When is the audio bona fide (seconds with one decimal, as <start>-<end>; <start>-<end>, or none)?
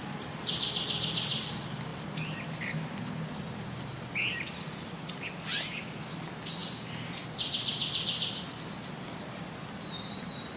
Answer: 0.0-10.6